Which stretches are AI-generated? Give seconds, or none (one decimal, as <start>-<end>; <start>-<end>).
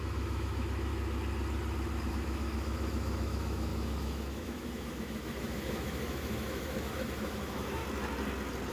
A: 0.0-0.9; 2.1-7.8